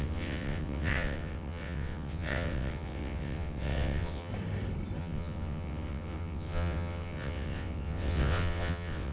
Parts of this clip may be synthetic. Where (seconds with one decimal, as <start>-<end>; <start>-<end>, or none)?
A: 0.0-4.3; 5.0-9.1